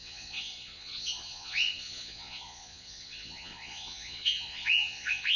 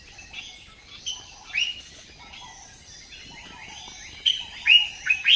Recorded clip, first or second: second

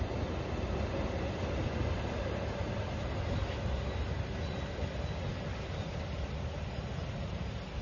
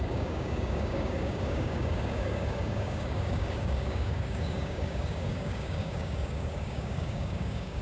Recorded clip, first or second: first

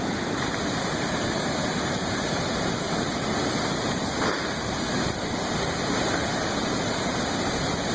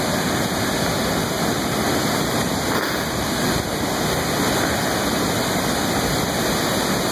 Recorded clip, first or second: second